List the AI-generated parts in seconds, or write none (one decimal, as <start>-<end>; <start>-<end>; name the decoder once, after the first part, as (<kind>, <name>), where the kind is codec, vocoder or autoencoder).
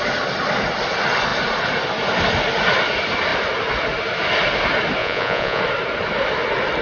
5.0-5.6 (vocoder, Vocos)